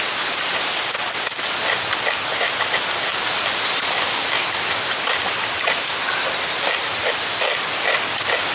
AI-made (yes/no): no